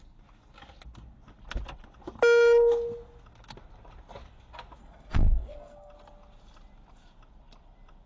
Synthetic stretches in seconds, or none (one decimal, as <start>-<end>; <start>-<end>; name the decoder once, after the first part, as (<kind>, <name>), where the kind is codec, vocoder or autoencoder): 4.8-5.9 (codec, SNAC)